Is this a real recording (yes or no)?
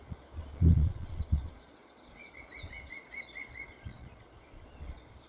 no